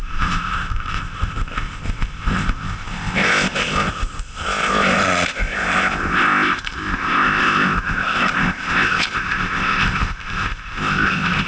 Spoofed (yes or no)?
yes